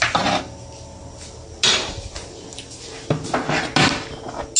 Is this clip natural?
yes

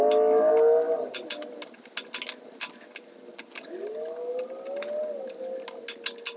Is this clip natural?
yes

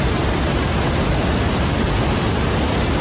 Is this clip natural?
yes